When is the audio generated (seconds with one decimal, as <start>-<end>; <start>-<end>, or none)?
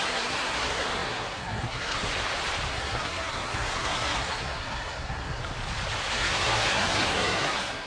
0.0-2.1; 2.7-5.4; 6.1-7.9